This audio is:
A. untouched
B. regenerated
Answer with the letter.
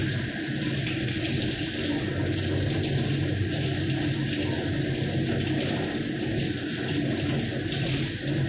A